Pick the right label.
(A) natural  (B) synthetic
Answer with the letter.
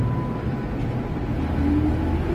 A